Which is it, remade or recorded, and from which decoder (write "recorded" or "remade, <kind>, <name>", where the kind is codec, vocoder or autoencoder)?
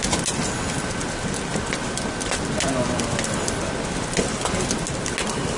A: recorded